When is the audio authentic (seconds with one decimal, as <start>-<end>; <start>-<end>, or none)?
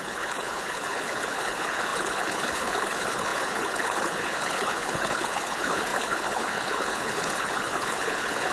none